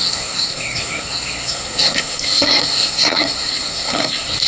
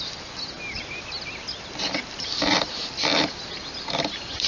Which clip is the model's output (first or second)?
first